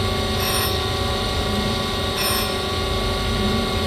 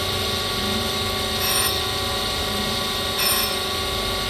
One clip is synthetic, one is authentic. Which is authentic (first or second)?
first